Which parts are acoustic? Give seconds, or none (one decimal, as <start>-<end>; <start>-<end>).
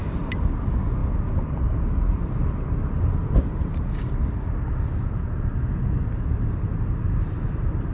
0.6-1.0; 5.7-7.9